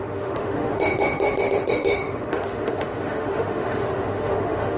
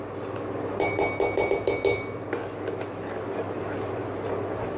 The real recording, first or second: second